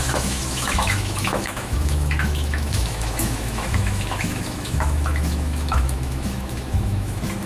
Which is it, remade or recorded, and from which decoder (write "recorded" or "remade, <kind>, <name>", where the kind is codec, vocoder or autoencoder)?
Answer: remade, autoencoder, DAC-VAE